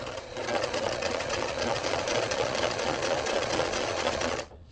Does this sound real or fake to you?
fake